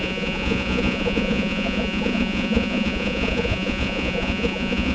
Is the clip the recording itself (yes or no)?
no